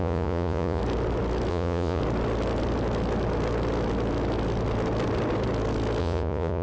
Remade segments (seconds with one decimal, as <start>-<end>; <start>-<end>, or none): 0.0-0.8; 1.5-2.0; 6.0-6.6